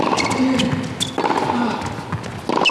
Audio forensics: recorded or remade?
recorded